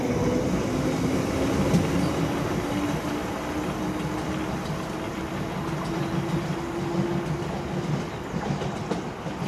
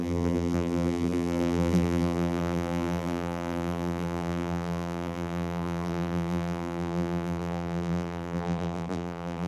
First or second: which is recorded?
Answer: first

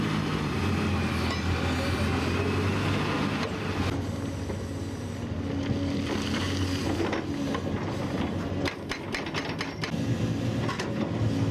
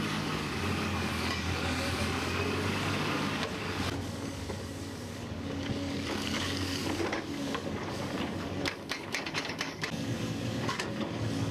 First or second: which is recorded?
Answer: first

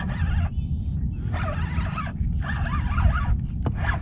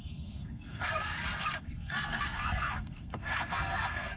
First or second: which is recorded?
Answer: first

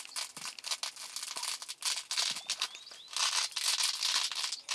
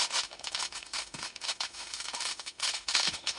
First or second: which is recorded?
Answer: first